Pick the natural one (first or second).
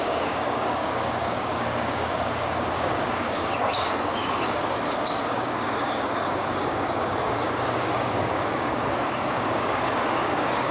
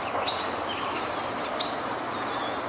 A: second